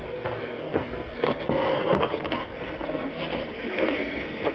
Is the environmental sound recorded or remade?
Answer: remade